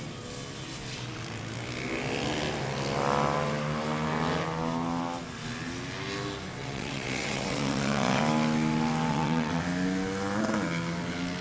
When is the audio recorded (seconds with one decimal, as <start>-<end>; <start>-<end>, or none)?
0.0-6.6; 8.2-9.1; 9.6-11.4